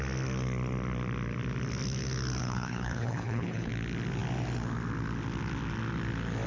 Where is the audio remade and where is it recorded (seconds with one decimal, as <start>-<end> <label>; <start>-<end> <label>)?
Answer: 0.0-2.4 recorded; 2.4-3.7 remade; 3.7-6.5 recorded